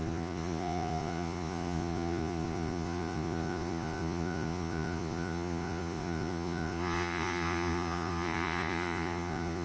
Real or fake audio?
fake